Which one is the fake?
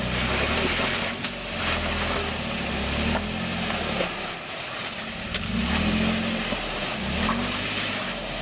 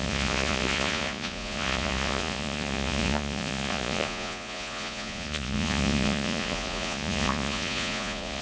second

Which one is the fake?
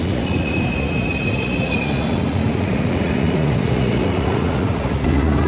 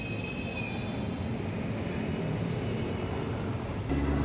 first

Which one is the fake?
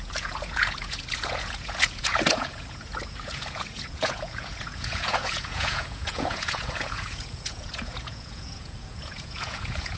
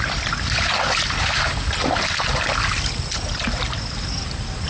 first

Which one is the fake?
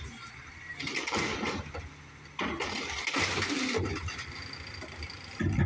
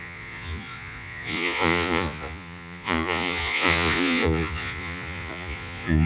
second